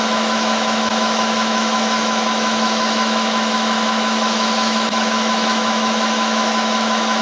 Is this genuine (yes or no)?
no